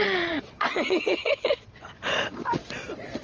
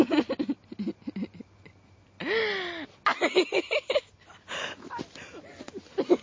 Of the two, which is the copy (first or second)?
first